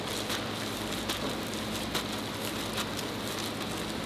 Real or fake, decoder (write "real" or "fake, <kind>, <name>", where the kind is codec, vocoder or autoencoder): real